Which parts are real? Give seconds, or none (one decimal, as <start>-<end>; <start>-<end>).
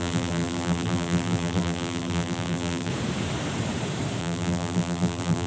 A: 2.9-4.2